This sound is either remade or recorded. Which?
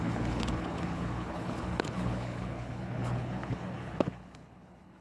remade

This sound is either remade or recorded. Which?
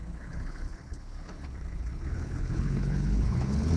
remade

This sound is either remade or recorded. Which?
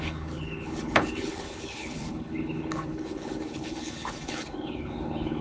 remade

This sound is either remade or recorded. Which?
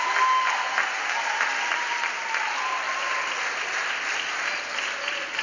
recorded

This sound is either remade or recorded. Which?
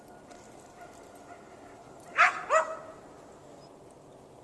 recorded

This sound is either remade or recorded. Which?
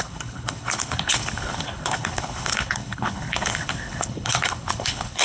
remade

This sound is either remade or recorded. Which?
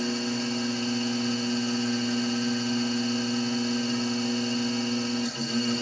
recorded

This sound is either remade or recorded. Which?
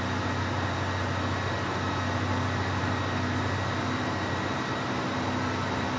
recorded